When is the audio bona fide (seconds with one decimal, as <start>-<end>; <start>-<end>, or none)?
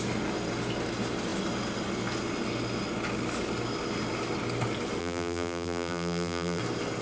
0.0-5.0; 6.6-7.0